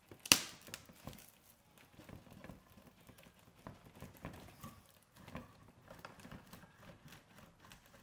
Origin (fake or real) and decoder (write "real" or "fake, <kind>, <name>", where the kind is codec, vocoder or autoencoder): real